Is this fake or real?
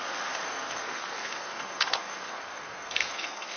fake